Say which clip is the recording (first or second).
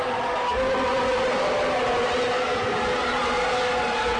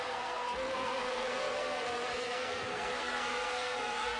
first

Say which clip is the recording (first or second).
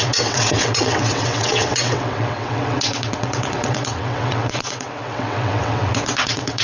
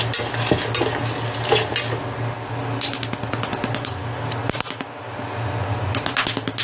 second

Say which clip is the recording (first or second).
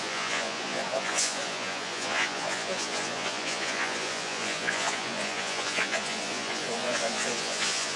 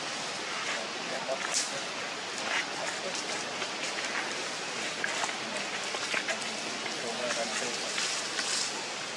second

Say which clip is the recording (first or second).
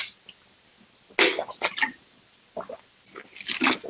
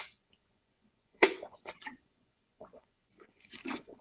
first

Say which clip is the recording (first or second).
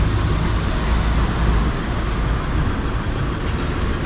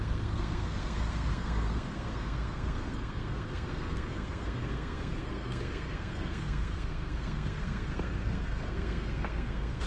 first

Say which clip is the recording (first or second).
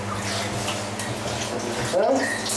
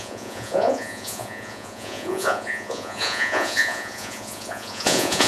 first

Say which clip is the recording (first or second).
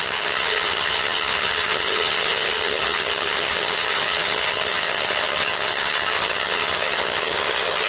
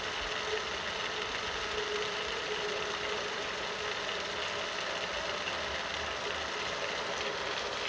second